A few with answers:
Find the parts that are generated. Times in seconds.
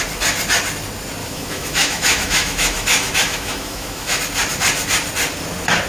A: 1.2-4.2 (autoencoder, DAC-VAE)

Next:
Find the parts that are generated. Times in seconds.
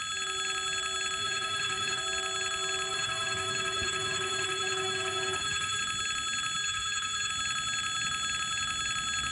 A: 1.2-2.0 (autoencoder, DAC-VAE); 2.9-5.8; 6.6-7.3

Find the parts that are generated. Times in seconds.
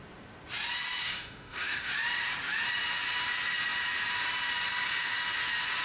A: 1.0-1.9 (autoencoder, DAC-VAE)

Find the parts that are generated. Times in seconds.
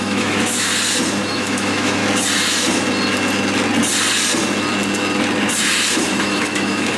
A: 0.0-0.7 (autoencoder, DAC-VAE); 1.3-2.0; 5.9-7.0